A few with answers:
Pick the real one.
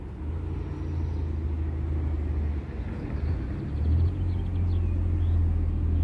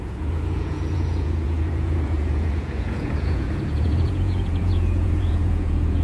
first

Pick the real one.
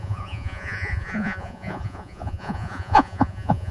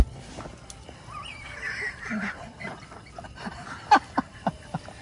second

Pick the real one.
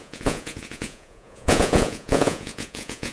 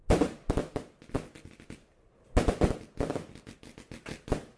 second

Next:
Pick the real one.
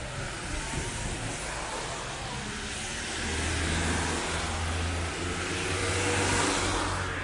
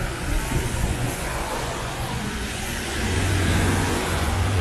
first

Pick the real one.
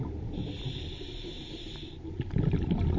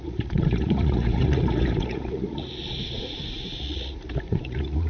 first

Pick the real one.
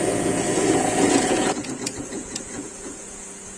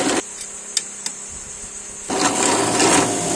second